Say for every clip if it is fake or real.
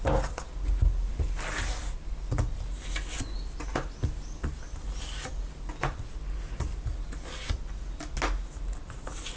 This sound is real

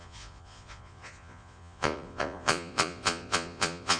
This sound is fake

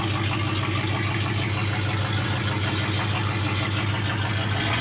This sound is real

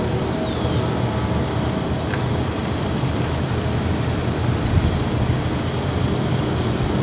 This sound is real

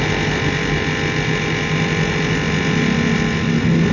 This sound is real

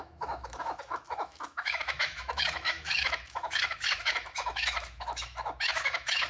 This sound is fake